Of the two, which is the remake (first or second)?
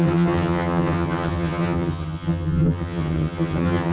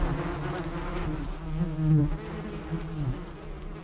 first